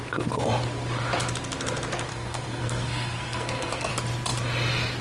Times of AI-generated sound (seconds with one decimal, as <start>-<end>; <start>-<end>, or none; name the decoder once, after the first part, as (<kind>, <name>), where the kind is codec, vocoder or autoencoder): 2.1-3.9 (codec, SNAC)